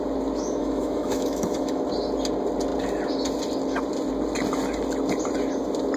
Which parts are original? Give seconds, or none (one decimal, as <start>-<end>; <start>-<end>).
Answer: 0.0-0.6; 1.8-6.0